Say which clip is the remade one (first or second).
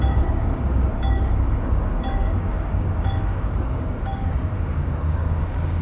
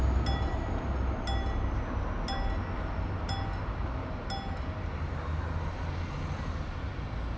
first